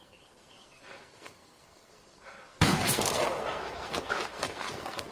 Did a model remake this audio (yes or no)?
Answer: yes